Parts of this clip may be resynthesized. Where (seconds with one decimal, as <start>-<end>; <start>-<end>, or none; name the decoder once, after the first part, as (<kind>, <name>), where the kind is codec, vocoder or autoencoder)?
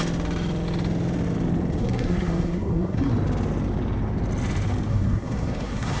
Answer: 1.8-3.1 (codec, SNAC); 4.9-6.0